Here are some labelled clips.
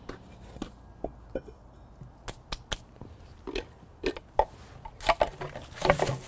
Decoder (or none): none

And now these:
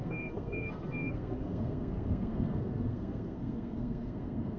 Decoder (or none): codec, SNAC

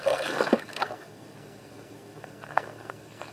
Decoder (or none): codec, SNAC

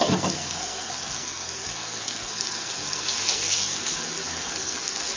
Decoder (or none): codec, SNAC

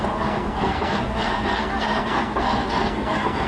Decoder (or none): codec, SNAC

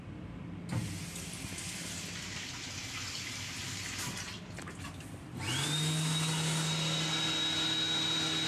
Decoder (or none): none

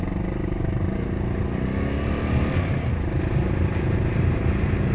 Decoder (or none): none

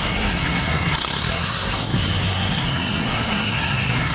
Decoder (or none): codec, SNAC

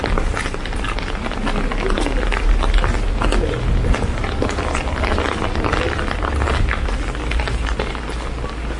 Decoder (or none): none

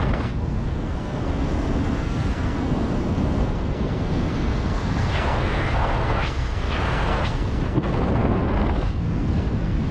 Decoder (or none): codec, SNAC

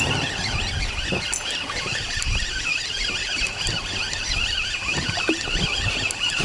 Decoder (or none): none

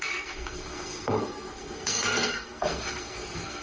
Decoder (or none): codec, SNAC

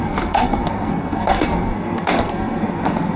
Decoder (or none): codec, SNAC